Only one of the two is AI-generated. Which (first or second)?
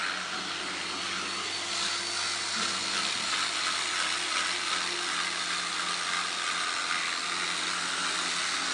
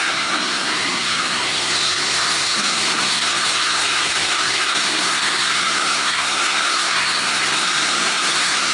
second